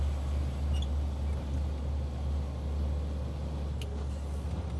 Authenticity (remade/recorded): recorded